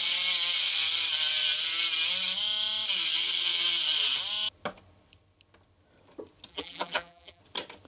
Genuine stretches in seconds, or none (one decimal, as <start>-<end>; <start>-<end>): 0.0-6.5; 7.4-7.9